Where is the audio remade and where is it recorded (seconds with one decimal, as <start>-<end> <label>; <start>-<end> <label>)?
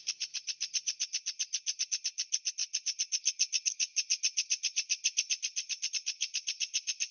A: 0.0-7.1 recorded